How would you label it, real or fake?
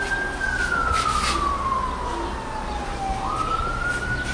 real